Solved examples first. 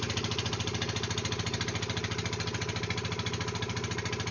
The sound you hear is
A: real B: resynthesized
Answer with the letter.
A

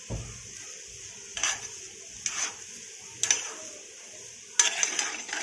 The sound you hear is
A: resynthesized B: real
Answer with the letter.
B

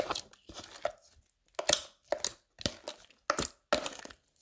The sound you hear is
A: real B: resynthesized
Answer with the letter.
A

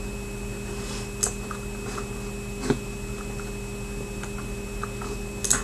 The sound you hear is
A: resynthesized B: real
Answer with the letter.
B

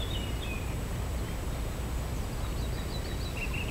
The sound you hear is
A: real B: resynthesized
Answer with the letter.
A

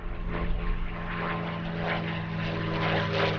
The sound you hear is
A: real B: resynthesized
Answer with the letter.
A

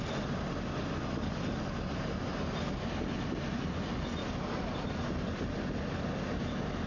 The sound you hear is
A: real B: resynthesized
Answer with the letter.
A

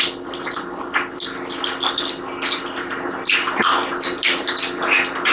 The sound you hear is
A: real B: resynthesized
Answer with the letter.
A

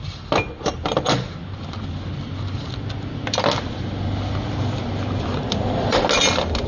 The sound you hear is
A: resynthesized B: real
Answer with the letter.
B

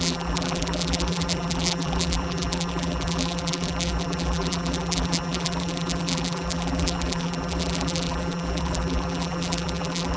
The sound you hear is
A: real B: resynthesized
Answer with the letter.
B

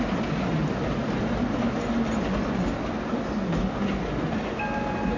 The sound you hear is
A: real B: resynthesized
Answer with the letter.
A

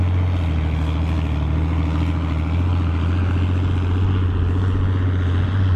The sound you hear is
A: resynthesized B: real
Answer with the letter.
B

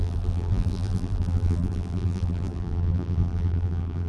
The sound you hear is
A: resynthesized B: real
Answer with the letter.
A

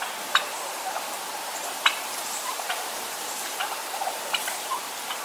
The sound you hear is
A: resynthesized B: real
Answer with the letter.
A